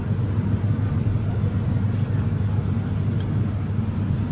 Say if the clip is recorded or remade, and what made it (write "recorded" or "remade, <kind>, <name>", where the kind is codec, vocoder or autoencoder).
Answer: recorded